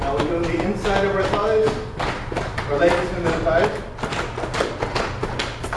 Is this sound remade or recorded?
recorded